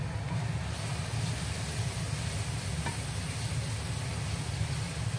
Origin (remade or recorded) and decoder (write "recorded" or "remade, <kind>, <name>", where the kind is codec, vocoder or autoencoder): recorded